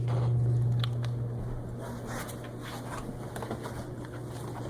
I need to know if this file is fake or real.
real